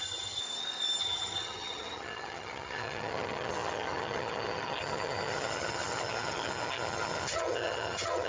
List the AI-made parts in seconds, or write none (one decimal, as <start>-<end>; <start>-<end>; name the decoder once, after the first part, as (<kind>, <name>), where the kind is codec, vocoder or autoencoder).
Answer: 0.0-0.4 (vocoder, HiFi-GAN); 1.0-8.3